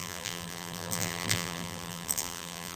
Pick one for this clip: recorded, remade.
remade